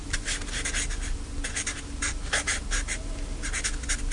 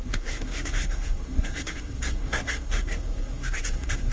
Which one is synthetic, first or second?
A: second